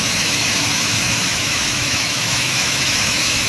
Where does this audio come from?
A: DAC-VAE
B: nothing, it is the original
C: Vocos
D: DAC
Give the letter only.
A